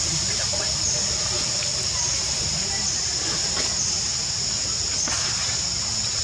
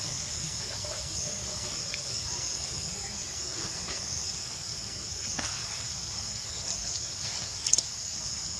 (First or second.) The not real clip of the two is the second